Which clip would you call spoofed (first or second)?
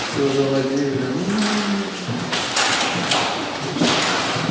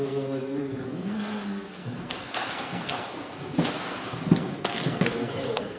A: second